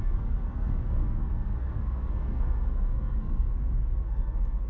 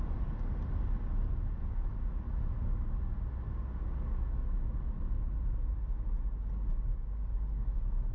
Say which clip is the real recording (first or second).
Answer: second